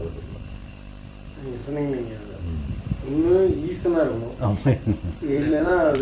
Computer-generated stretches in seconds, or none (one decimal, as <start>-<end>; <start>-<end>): 0.7-1.6; 5.2-6.0